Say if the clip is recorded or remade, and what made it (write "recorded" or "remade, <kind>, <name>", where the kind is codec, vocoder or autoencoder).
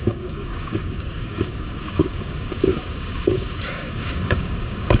remade, codec, DAC